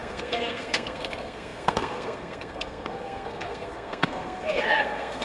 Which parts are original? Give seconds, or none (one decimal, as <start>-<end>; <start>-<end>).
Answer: none